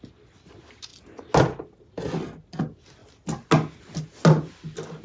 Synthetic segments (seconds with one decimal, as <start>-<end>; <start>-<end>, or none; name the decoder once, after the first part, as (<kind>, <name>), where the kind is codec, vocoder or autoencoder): none